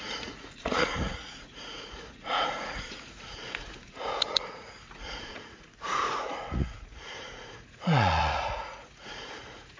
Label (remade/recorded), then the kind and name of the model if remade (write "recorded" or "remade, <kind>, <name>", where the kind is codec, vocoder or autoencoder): remade, vocoder, Vocos